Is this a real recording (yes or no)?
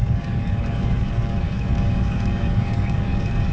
no